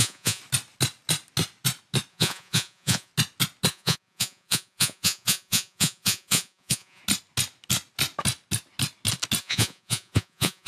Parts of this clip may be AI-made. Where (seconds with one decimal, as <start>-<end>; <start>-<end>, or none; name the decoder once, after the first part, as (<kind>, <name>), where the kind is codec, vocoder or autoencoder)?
0.0-0.4 (vocoder, Vocos); 2.1-3.1; 3.7-7.0; 9.4-10.7